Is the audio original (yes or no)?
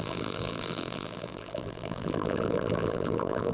no